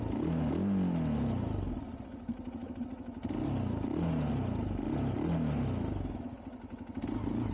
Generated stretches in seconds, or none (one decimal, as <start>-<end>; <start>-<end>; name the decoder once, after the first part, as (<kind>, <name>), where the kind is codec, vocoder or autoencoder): none